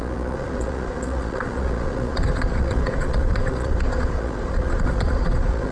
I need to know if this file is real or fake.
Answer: fake